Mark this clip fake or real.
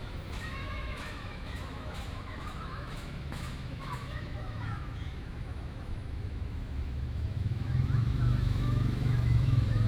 fake